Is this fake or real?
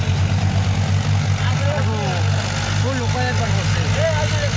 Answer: real